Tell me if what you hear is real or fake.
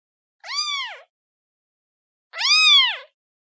real